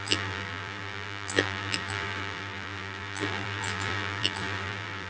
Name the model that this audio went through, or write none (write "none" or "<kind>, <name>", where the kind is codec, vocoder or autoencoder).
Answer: vocoder, BigVGAN v2